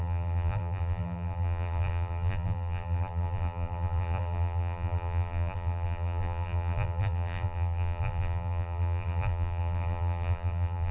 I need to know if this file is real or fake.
fake